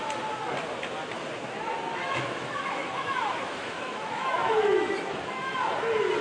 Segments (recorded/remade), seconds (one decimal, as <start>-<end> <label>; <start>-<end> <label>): 0.0-1.9 recorded; 1.9-5.5 remade; 5.5-6.2 recorded